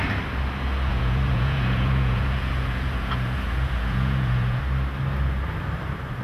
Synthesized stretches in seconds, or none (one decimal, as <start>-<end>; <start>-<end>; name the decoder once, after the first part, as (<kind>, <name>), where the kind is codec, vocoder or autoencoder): 0.9-4.6 (vocoder, Vocos)